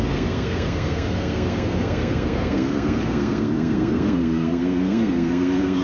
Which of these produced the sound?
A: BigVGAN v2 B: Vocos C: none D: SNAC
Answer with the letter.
D